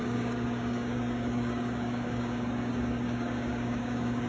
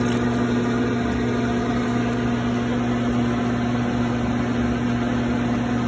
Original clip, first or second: second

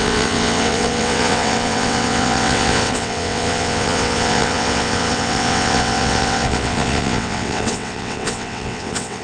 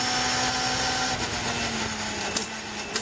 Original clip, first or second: second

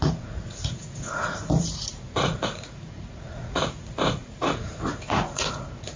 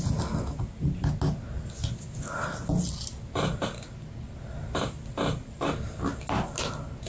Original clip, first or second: second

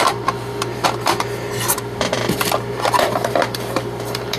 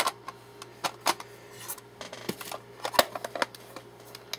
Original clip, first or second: second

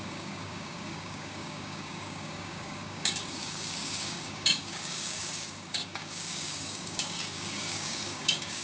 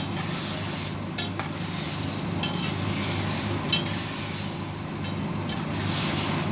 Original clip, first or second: second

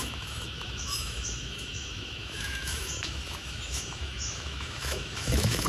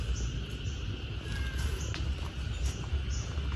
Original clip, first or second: second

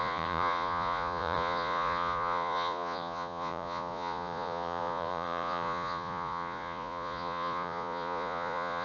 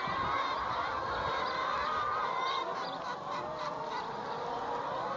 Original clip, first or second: second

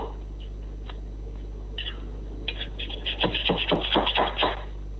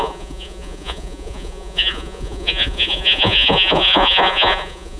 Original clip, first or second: first